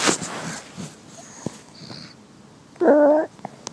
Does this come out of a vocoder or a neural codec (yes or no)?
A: no